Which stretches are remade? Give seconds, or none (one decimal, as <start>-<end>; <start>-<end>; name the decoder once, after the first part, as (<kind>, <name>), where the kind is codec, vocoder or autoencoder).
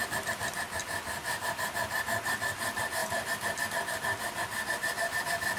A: none